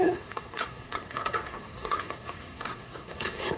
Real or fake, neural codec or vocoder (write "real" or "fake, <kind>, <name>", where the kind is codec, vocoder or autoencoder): fake, codec, SNAC